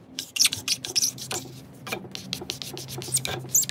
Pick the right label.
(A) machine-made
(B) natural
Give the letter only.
B